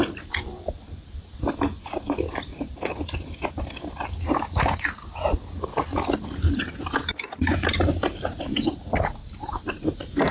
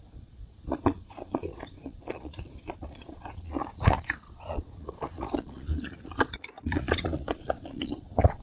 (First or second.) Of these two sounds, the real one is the first